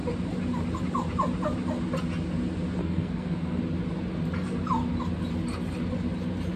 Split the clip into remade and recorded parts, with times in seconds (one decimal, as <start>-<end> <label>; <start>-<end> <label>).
0.0-2.8 recorded; 2.8-3.6 remade; 3.6-6.6 recorded

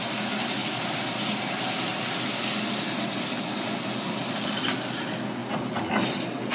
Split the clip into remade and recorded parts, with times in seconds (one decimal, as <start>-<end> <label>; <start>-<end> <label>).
0.0-6.5 recorded